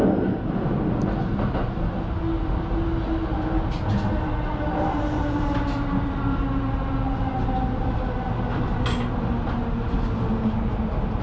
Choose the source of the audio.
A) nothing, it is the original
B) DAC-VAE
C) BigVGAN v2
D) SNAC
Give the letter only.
A